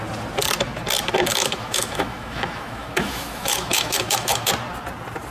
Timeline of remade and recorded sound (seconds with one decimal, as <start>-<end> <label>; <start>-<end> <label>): 0.0-1.3 recorded; 1.3-4.5 remade; 4.5-5.3 recorded